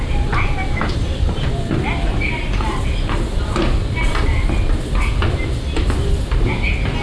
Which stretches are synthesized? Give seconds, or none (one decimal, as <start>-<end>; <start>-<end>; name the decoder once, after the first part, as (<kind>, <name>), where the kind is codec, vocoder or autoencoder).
0.0-1.7 (vocoder, BigVGAN v2)